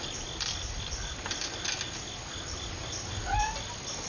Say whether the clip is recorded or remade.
recorded